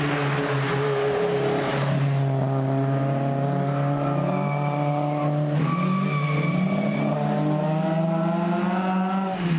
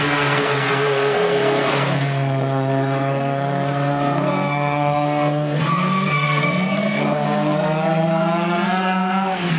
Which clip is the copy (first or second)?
second